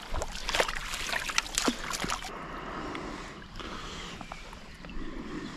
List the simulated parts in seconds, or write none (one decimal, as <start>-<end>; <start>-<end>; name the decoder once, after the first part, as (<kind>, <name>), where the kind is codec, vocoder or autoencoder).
none